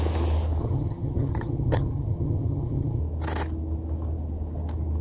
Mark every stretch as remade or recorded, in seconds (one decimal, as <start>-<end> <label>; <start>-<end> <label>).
0.0-0.6 recorded; 0.6-3.0 remade; 3.0-5.0 recorded